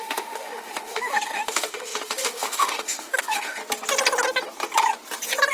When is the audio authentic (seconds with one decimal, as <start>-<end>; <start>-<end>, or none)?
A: 3.6-5.5